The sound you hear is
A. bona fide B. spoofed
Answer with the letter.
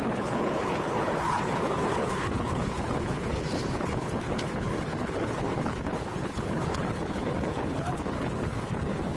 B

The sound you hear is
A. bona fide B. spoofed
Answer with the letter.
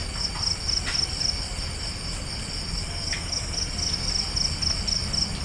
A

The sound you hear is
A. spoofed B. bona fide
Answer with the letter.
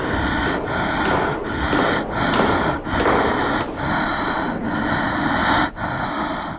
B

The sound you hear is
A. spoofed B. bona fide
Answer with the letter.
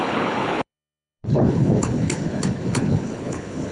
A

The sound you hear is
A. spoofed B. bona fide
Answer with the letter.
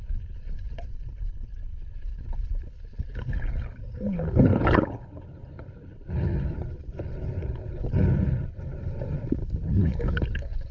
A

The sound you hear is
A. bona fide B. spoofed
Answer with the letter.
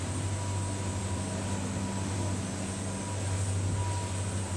A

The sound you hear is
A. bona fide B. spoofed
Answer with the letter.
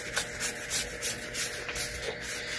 A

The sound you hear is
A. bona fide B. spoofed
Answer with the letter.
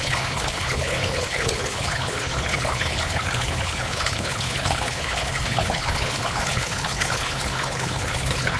B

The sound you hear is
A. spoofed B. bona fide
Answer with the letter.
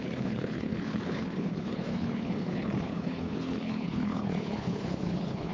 A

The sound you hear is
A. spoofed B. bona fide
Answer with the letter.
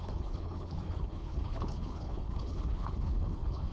A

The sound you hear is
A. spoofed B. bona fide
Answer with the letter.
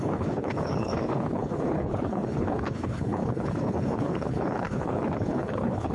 A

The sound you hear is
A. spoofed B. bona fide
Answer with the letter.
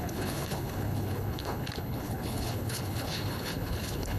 A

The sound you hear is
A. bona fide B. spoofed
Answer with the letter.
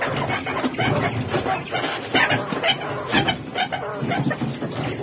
A